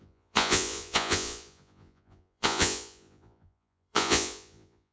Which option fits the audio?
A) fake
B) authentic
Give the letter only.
A